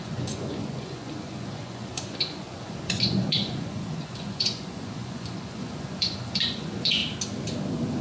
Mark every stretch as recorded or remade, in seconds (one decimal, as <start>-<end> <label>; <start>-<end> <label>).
0.0-7.0 remade; 7.0-8.0 recorded